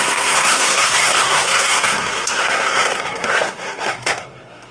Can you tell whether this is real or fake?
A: fake